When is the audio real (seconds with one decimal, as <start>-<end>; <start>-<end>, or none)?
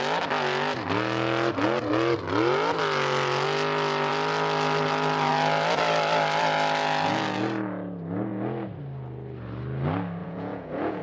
0.0-10.2